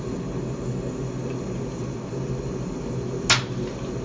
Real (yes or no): yes